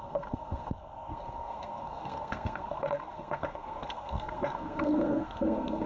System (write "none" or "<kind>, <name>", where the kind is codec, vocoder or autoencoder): codec, SNAC